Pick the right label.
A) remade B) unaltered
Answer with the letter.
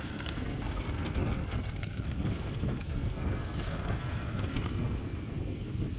A